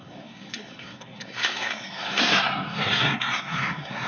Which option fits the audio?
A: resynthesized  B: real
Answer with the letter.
A